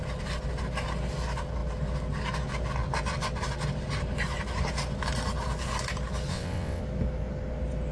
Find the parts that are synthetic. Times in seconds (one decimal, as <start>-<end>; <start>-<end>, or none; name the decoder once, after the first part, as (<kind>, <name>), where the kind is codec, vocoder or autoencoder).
6.3-6.8 (vocoder, WaveNeXt)